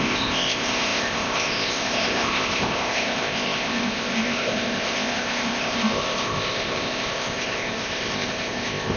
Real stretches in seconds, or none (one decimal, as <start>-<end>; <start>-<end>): none